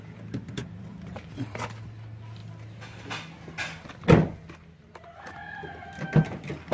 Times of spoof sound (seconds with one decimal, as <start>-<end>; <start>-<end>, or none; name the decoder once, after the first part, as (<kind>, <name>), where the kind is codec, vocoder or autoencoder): 0.6-1.6 (vocoder, BigVGAN v2)